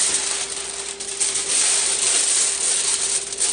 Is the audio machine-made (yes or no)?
no